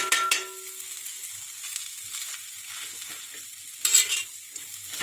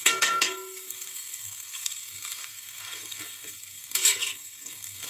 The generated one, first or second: second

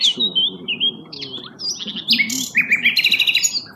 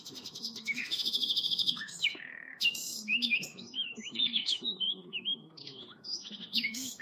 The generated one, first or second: second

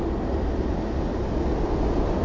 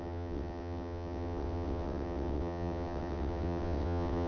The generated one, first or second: second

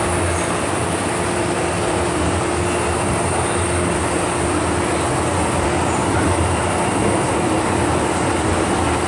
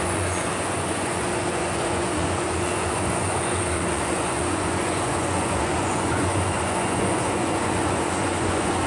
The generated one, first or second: second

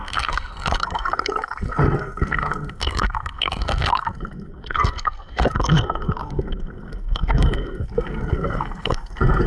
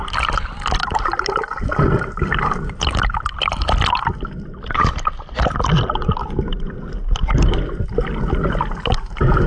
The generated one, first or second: first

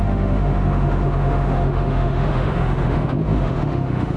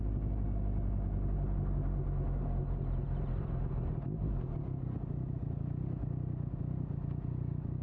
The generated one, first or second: first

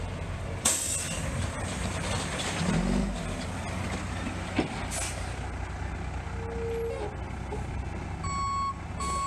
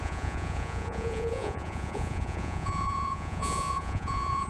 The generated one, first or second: second